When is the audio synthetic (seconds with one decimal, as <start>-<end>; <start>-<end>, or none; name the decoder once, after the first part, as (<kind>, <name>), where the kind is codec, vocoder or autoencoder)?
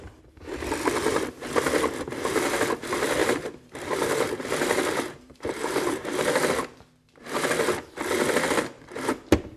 3.2-6.5 (vocoder, BigVGAN v2)